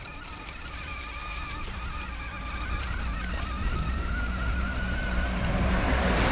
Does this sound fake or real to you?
fake